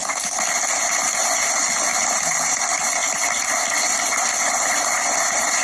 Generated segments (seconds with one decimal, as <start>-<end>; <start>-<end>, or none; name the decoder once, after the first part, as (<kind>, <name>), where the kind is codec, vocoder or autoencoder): none